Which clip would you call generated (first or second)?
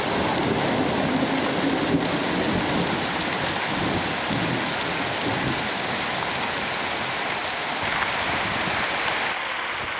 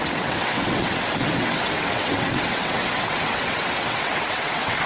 second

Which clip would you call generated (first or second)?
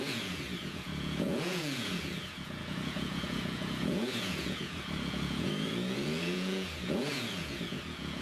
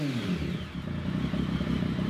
first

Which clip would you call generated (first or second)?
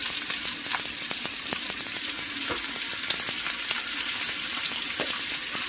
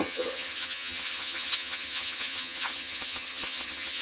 second